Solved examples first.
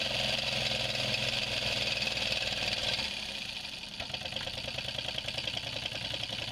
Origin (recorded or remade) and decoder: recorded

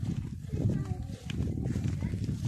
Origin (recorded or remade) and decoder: recorded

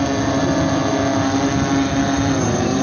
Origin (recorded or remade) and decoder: recorded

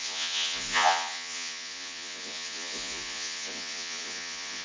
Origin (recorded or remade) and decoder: remade, vocoder, Vocos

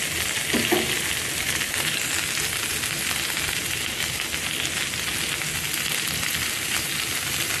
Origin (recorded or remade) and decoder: recorded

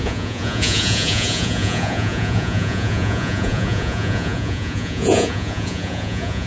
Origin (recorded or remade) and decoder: remade, vocoder, Vocos